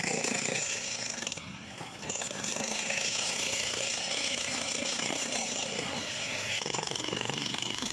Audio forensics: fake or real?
fake